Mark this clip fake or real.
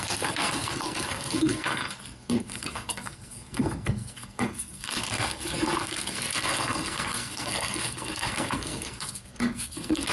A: fake